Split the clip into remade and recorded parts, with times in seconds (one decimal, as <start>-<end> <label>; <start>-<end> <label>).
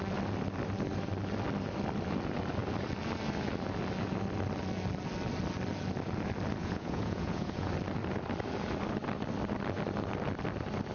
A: 0.0-6.6 recorded; 6.6-7.7 remade; 7.7-10.9 recorded